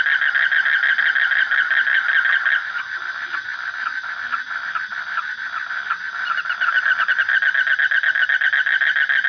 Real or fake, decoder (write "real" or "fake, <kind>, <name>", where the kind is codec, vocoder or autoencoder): real